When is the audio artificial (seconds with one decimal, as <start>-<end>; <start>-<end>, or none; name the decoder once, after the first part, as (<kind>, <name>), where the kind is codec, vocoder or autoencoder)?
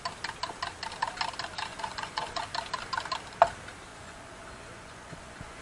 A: 1.7-2.4 (vocoder, Vocos); 3.9-5.6